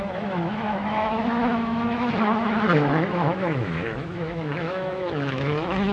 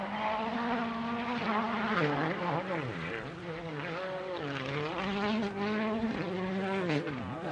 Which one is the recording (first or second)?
second